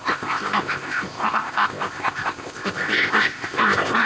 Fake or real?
fake